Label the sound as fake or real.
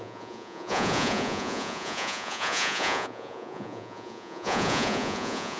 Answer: fake